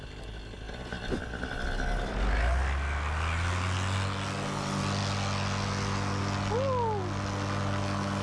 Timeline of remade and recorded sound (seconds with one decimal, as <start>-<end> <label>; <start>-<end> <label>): 0.0-8.2 recorded